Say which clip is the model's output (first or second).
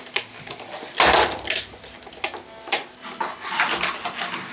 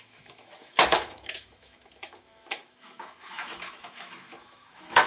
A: second